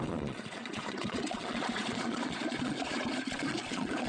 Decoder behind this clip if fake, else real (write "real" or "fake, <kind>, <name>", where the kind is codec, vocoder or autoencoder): fake, vocoder, Vocos